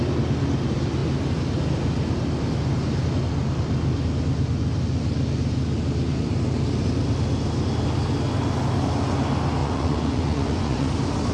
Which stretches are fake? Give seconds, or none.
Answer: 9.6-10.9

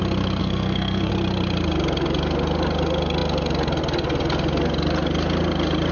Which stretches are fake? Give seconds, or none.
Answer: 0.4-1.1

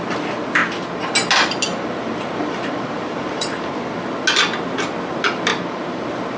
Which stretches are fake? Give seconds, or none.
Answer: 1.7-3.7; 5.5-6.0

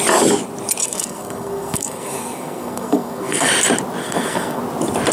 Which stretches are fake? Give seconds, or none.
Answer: 0.8-3.5; 4.0-4.6